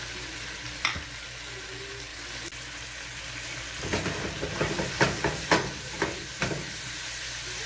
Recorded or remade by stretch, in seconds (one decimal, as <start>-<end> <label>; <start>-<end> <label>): 0.0-7.7 recorded